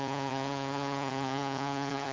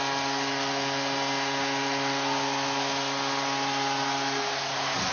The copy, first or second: first